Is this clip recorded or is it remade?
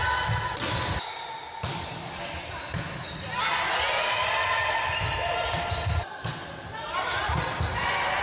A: recorded